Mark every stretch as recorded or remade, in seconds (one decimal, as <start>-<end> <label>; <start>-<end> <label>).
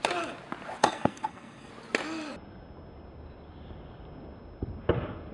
0.0-0.8 recorded; 0.8-1.7 remade; 1.7-5.3 recorded